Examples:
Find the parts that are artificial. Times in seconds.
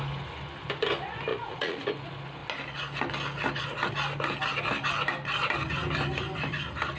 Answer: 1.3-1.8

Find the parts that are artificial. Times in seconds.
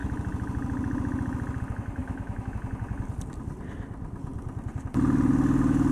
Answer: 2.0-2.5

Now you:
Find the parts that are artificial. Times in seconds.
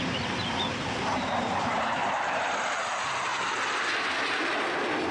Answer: 0.0-3.3; 4.3-5.1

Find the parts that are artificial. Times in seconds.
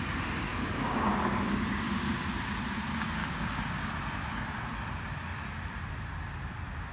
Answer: 0.5-2.2; 3.2-3.7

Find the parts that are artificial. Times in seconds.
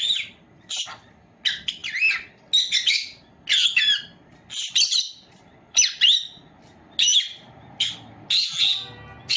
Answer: none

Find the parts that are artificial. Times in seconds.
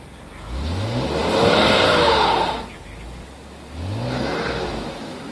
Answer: none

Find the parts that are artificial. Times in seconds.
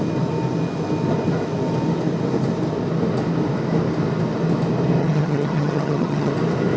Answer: 5.0-6.3